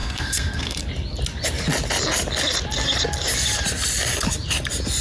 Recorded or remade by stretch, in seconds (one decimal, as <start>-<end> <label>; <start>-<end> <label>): 0.0-0.8 remade; 0.8-5.0 recorded